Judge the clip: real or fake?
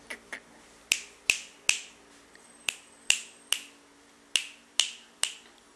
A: real